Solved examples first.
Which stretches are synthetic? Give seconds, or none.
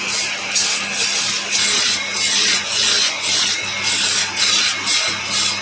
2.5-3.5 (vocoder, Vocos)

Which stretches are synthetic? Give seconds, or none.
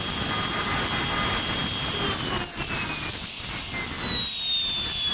none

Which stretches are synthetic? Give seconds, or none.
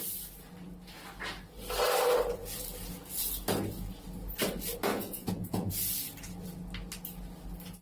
4.9-5.7 (vocoder, Vocos)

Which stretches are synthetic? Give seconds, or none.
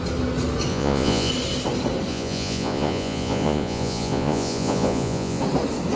0.7-1.3 (vocoder, Vocos); 2.1-5.4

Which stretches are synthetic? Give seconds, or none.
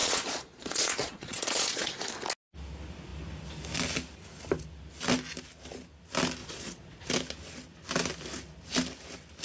0.0-1.9 (vocoder, Vocos); 6.4-7.1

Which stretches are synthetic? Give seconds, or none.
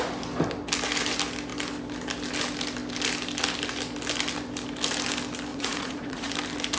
5.5-6.3 (vocoder, Vocos)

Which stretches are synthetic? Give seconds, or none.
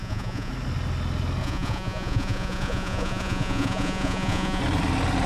0.0-0.5 (vocoder, Vocos); 1.4-4.6